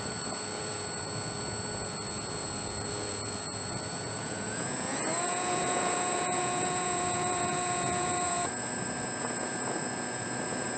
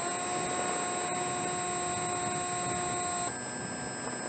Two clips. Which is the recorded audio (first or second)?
second